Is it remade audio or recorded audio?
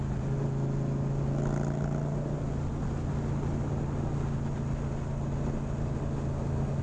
recorded